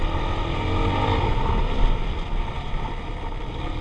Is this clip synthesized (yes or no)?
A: no